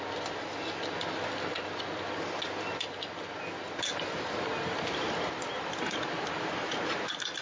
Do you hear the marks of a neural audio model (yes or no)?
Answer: no